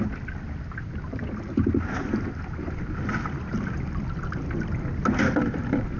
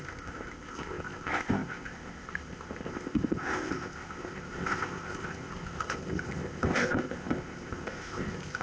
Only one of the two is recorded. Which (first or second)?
first